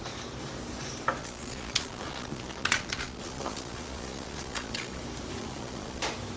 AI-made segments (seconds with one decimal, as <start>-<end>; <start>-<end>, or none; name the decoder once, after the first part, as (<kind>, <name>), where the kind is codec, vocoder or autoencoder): 1.2-5.0 (vocoder, Vocos); 5.4-6.0